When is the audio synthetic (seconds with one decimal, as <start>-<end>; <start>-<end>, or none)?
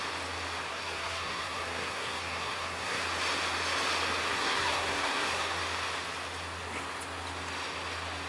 0.7-3.0; 4.2-5.6